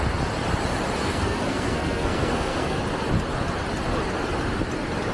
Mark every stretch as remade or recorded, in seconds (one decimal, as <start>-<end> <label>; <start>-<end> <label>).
0.0-1.0 recorded; 1.0-2.8 remade; 2.8-5.1 recorded